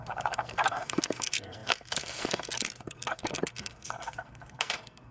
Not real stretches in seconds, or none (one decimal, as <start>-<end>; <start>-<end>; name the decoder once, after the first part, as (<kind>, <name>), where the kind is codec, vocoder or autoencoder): 0.0-5.1 (codec, SNAC)